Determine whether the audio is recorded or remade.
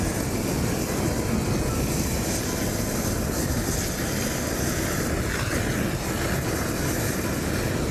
recorded